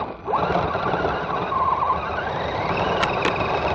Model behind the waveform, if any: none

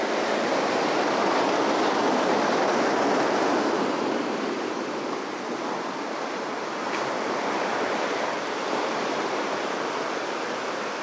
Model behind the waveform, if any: vocoder, BigVGAN v2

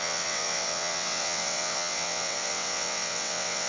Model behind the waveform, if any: vocoder, WaveNeXt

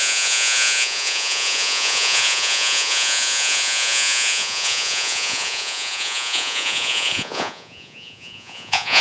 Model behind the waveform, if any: vocoder, Vocos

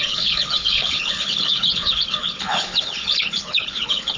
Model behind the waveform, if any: codec, HILCodec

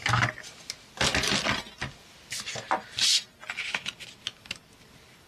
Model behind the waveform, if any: none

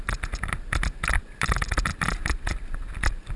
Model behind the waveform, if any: vocoder, BigVGAN v2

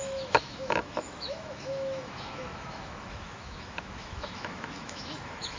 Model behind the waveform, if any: autoencoder, DAC-VAE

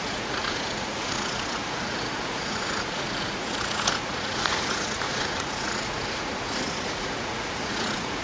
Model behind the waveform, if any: vocoder, Vocos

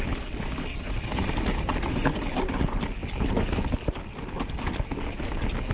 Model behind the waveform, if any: none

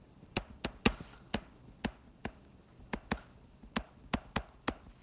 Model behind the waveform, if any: none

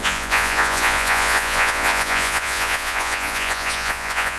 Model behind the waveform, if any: vocoder, Vocos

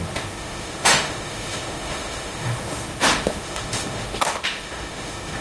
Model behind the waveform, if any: autoencoder, DAC-VAE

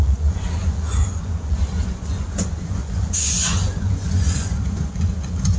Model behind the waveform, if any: vocoder, Vocos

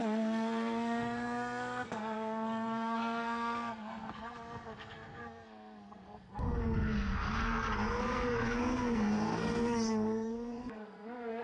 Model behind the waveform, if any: codec, SNAC